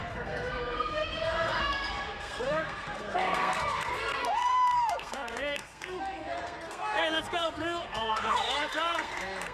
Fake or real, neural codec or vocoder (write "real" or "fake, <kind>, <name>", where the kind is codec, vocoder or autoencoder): fake, codec, SNAC